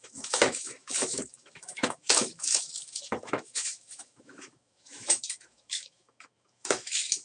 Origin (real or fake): fake